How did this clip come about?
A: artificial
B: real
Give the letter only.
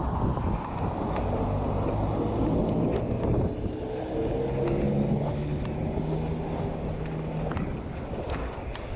B